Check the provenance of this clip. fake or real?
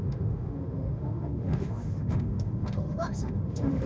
fake